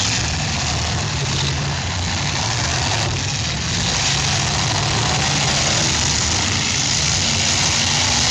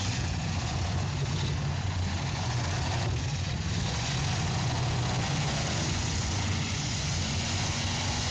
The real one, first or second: first